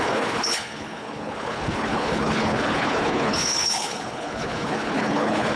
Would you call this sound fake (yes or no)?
yes